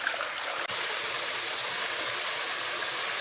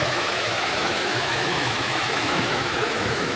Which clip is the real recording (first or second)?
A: first